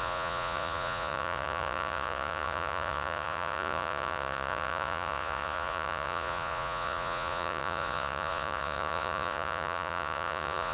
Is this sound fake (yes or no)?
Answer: yes